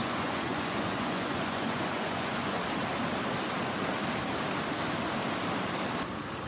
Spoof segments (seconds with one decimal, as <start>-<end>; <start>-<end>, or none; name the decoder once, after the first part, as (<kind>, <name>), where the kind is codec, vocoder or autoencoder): 0.0-2.6 (vocoder, Vocos)